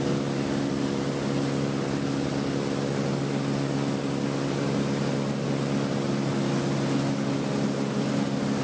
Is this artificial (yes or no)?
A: no